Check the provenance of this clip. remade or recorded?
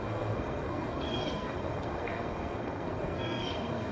remade